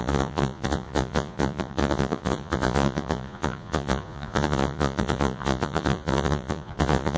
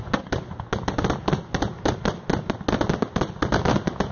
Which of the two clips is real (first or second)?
second